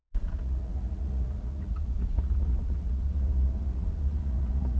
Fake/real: fake